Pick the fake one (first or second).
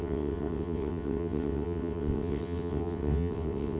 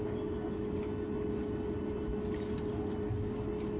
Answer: first